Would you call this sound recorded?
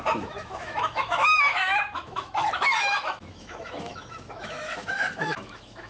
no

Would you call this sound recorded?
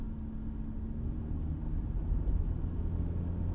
yes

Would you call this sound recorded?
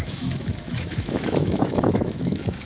no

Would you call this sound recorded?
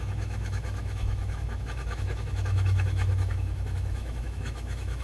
no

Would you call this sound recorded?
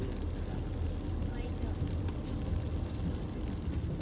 yes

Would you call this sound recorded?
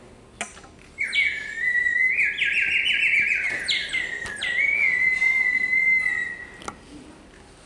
yes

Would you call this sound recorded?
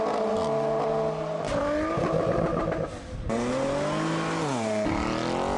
yes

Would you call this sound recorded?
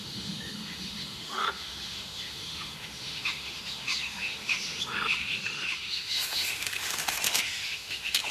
no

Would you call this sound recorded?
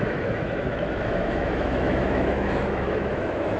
no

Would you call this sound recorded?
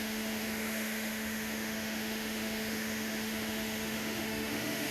no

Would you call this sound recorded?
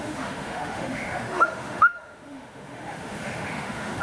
no